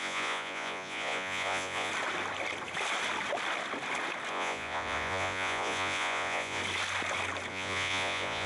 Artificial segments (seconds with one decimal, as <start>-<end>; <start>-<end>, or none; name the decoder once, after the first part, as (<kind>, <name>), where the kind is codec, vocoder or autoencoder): 0.0-1.9 (vocoder, Vocos); 4.3-6.6; 7.5-8.5